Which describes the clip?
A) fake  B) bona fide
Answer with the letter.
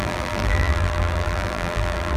A